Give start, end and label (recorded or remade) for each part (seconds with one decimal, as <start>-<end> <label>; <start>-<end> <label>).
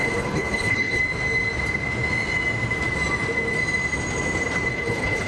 0.0-1.0 remade; 1.0-4.7 recorded; 4.7-5.3 remade